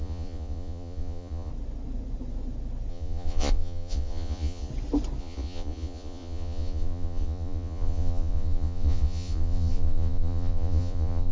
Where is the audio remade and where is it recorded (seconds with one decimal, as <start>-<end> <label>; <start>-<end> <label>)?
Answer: 0.0-1.5 remade; 1.5-2.9 recorded; 2.9-4.7 remade; 4.7-5.2 recorded; 5.2-11.3 remade